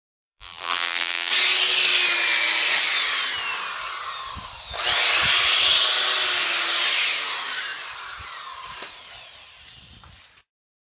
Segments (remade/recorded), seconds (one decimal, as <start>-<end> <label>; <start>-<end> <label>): 0.0-1.3 remade; 1.3-10.8 recorded